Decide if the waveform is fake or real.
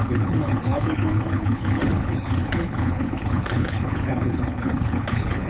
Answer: fake